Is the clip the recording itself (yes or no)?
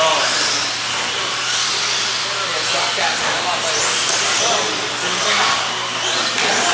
yes